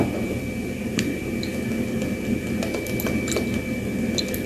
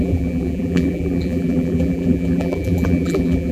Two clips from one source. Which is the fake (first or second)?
second